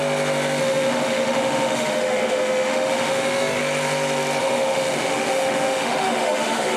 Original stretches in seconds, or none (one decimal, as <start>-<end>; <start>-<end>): 0.0-0.6; 3.6-4.4